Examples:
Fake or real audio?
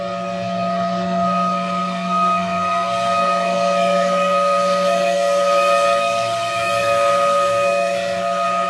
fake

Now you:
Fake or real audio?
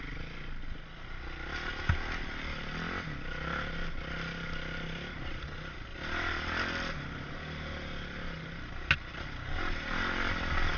real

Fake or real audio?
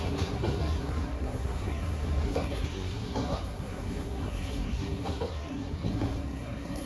fake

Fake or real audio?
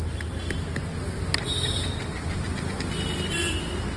real